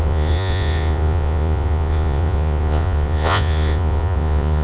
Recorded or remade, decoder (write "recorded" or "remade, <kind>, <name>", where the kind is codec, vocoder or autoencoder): remade, vocoder, Vocos